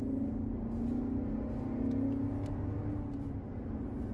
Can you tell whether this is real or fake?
real